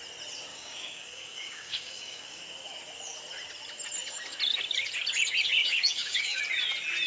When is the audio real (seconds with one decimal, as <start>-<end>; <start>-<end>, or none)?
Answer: 0.0-0.5; 2.4-5.6; 6.4-7.1